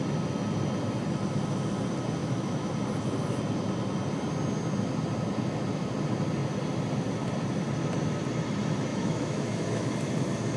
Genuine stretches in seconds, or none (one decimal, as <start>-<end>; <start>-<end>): 0.0-2.2; 2.7-8.9; 9.9-10.6